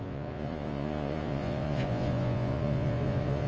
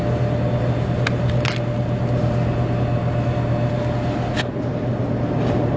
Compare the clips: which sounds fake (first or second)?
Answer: first